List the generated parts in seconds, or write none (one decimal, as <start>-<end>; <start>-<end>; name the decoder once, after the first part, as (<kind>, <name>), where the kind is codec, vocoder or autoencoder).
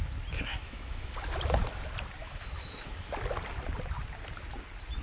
0.5-1.1 (autoencoder, DAC-VAE); 2.2-3.1